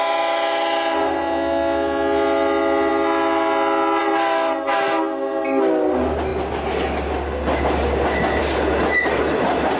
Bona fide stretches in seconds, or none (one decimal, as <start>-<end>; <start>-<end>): 0.0-9.8